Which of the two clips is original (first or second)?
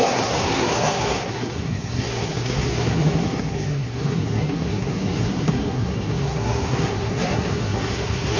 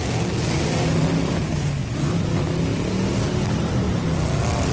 second